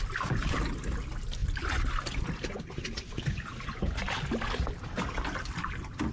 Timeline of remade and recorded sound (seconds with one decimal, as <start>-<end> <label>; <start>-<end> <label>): 0.0-6.1 recorded